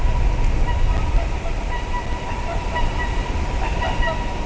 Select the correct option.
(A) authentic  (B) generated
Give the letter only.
A